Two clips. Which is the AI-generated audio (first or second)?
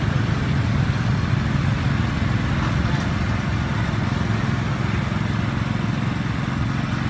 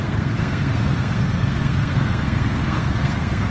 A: second